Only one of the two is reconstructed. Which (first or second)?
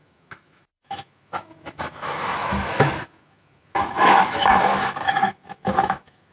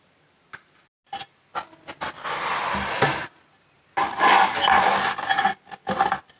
first